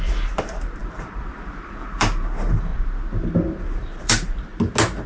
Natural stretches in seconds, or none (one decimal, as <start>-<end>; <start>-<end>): 2.7-3.6; 4.5-5.1